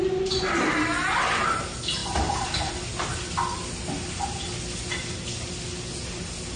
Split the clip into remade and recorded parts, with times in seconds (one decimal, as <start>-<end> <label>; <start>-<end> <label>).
0.0-6.6 recorded